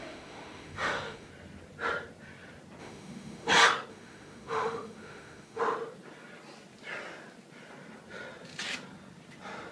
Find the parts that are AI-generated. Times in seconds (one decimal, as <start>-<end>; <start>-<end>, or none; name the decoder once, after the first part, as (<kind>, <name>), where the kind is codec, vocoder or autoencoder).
0.0-1.3 (autoencoder, DAC-VAE); 2.8-3.5; 3.9-5.6